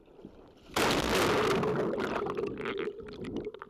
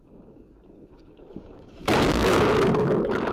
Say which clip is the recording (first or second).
first